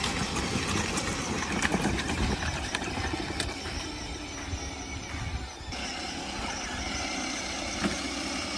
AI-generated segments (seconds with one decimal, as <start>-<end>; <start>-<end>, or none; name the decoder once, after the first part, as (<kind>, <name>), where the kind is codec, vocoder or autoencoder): none